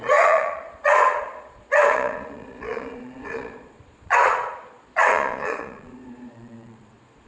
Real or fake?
fake